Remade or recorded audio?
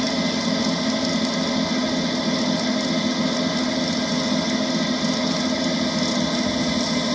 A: recorded